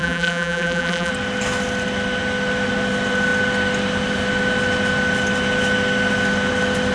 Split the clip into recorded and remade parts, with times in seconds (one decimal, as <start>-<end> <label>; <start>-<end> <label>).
0.0-1.1 remade; 1.1-6.9 recorded

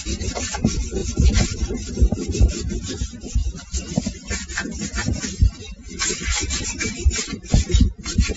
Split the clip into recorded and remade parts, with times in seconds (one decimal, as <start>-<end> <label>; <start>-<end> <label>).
0.0-1.0 recorded; 1.0-2.5 remade; 2.5-6.3 recorded; 6.3-7.1 remade; 7.1-8.4 recorded

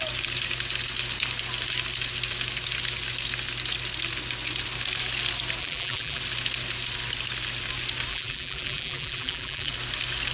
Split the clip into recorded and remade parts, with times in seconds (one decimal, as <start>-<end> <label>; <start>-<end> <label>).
0.0-5.6 recorded; 5.6-6.2 remade; 6.2-8.1 recorded; 8.1-9.7 remade; 9.7-10.3 recorded

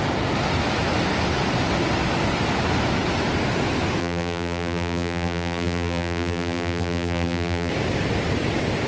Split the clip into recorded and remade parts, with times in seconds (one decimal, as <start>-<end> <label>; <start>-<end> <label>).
0.0-4.0 recorded; 4.0-7.7 remade; 7.7-8.9 recorded

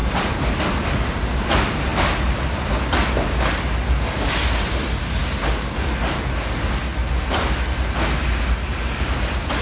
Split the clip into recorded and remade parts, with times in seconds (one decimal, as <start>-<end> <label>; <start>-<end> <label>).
0.0-0.6 remade; 0.6-6.9 recorded; 6.9-9.6 remade